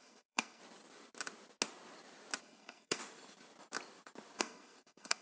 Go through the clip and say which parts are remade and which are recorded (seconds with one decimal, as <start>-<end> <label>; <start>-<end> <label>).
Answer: 0.0-0.6 remade; 0.6-2.4 recorded; 2.4-3.0 remade; 3.0-4.4 recorded; 4.4-5.2 remade